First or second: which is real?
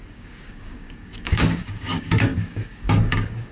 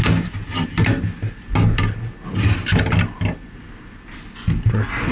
second